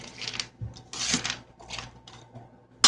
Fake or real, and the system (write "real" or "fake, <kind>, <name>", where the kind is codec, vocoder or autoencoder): real